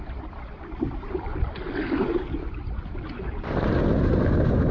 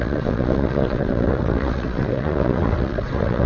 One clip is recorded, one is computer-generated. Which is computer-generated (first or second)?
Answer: second